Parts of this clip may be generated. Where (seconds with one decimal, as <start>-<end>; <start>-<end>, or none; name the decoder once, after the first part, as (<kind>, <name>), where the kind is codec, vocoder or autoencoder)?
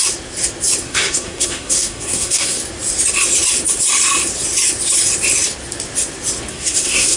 0.8-2.6 (codec, SNAC); 6.5-7.2